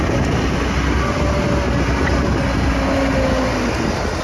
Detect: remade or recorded recorded